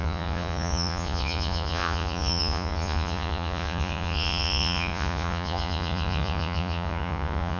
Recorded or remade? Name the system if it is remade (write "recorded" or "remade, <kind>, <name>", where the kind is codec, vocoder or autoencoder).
remade, vocoder, Vocos